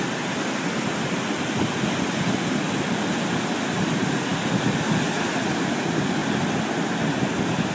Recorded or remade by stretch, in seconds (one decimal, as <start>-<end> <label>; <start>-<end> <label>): 0.0-7.7 recorded